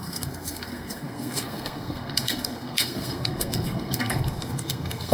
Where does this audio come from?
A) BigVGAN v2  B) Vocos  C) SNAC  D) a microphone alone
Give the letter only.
C